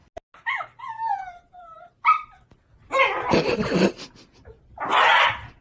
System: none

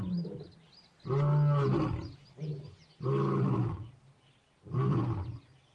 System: none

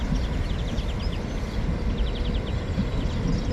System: vocoder, BigVGAN v2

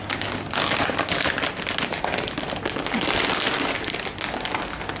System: none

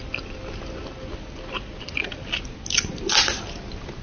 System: none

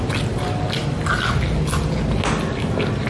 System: none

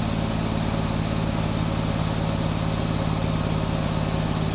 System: none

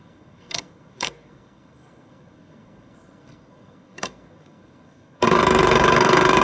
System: codec, SNAC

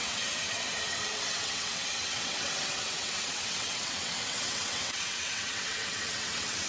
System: vocoder, WaveNeXt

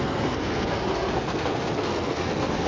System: codec, SNAC